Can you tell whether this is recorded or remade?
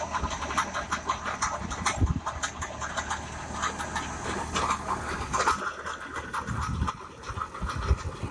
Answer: recorded